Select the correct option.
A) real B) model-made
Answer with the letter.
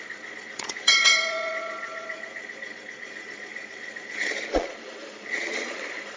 B